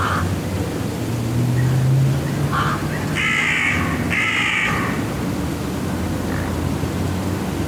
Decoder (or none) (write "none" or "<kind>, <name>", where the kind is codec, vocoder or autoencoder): none